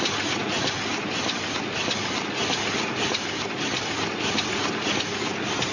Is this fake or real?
real